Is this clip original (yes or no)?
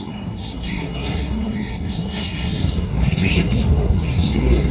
no